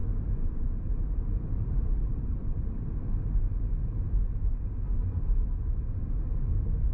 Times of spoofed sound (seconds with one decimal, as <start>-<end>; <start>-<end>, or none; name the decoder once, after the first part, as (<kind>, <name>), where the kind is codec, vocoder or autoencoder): 0.0-2.4 (vocoder, BigVGAN v2)